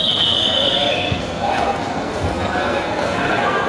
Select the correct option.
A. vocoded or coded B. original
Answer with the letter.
A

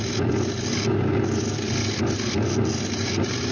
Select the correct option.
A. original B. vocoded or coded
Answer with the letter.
A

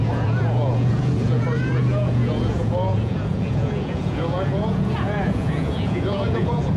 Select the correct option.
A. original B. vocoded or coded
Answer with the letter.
B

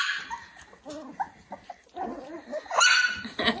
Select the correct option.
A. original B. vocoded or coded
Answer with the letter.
A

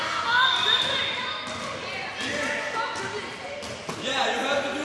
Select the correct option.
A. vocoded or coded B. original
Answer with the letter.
B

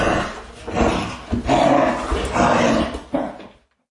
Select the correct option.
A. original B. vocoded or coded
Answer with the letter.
A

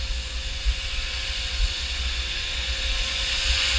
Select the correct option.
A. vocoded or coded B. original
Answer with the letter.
A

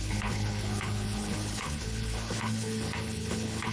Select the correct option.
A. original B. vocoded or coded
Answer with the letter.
B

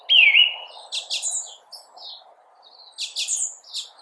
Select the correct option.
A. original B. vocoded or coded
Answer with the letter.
A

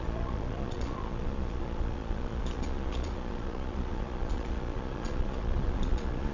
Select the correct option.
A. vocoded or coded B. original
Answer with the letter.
A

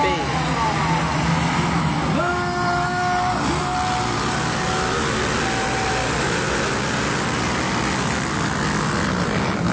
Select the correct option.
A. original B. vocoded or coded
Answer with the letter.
A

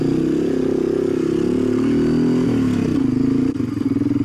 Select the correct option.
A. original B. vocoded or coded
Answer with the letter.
A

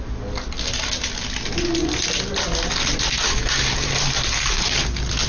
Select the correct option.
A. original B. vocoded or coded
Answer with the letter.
A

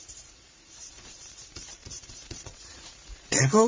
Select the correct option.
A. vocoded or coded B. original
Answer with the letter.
A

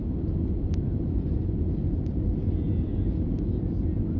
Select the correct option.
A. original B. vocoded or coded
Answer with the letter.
A